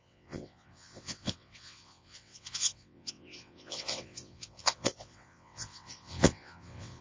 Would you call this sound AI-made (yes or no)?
yes